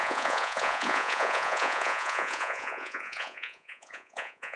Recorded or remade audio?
remade